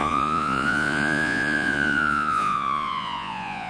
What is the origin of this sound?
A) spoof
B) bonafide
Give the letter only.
A